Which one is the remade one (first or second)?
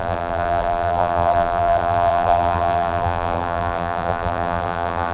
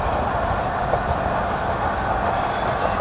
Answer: first